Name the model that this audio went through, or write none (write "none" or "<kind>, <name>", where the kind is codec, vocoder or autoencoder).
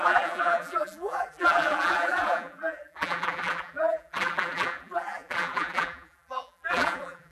vocoder, BigVGAN v2